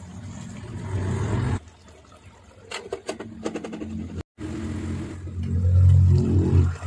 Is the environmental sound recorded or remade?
recorded